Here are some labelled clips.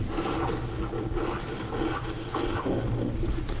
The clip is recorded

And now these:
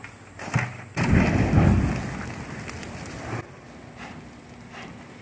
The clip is recorded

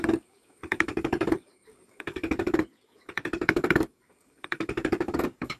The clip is remade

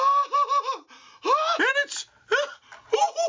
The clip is recorded